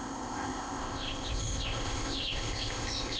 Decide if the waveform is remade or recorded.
remade